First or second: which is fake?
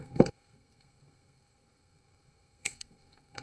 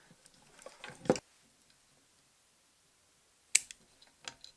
first